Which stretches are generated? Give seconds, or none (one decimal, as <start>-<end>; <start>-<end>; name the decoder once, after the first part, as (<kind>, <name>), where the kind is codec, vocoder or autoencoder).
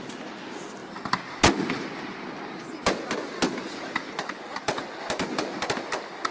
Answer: none